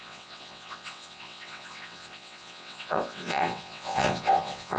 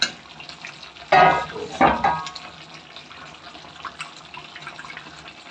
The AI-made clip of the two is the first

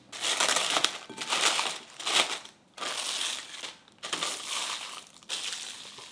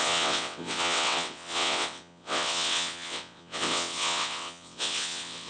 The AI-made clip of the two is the second